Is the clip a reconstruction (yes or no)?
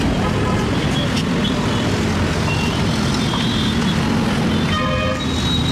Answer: no